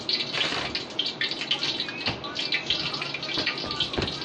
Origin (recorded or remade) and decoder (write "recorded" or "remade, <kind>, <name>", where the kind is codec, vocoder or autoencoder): recorded